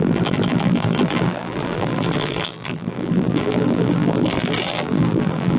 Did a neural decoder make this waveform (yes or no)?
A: yes